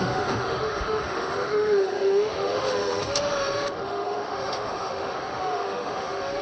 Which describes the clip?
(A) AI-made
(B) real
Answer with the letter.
A